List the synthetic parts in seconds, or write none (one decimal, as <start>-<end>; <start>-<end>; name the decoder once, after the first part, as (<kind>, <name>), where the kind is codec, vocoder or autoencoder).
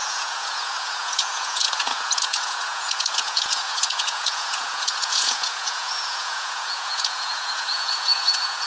0.0-8.7 (vocoder, Vocos)